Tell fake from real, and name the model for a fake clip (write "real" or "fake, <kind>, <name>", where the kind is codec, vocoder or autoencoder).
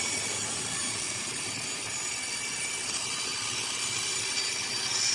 real